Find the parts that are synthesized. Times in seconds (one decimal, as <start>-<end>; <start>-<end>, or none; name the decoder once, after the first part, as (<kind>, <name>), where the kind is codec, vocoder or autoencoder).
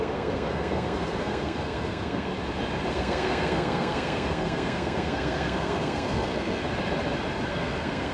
0.0-2.3 (codec, SNAC); 2.9-6.6; 7.5-8.1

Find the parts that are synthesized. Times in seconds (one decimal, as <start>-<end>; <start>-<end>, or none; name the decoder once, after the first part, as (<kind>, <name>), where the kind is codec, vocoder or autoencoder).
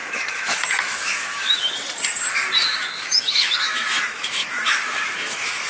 0.0-1.7 (autoencoder, DAC-VAE); 2.6-5.7